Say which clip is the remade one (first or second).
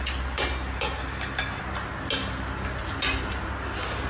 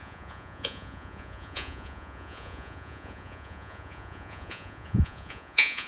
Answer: second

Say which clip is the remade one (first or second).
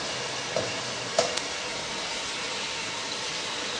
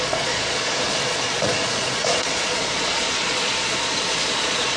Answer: second